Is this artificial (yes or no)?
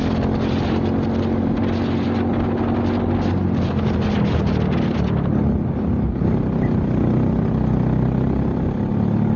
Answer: no